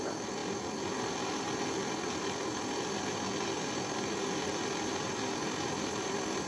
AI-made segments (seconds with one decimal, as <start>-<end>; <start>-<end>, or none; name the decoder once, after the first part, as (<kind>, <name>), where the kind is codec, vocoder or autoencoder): none